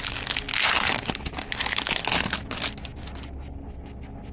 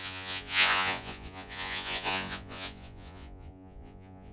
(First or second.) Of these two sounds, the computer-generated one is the second